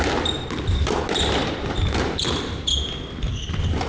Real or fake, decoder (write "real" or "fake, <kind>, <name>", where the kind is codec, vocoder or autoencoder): real